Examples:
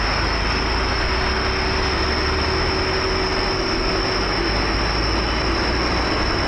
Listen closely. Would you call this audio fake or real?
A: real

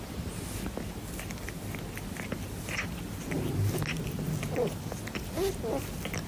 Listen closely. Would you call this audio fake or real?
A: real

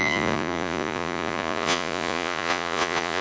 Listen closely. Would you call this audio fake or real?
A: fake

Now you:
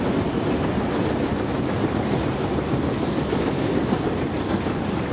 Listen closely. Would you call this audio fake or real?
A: real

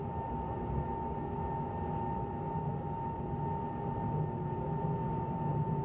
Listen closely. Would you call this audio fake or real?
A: real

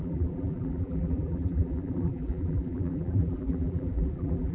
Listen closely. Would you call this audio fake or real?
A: fake